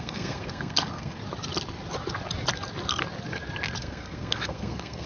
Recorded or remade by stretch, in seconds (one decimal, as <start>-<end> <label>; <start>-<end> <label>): 0.0-1.2 remade; 1.2-3.8 recorded; 3.8-5.1 remade